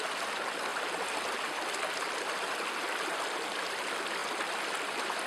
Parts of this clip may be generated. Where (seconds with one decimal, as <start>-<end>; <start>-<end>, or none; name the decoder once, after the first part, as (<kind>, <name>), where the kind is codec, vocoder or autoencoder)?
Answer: none